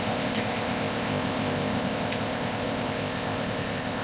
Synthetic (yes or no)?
yes